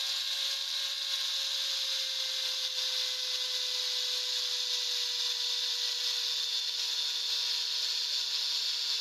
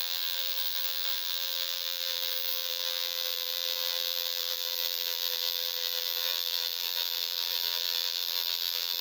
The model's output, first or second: second